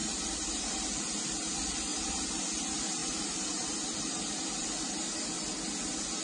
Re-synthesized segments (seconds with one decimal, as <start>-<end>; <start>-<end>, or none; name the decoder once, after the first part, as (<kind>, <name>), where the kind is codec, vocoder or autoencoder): 0.0-1.0 (vocoder, BigVGAN v2); 1.9-2.4; 3.0-3.8